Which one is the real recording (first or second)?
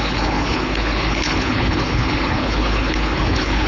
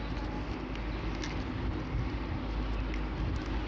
second